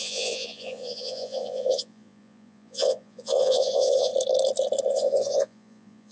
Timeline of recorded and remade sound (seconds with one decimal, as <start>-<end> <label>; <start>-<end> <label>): 0.0-4.1 remade; 4.1-4.9 recorded; 4.9-6.1 remade